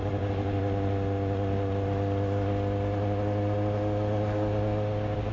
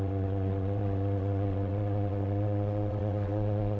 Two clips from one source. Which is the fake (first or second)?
second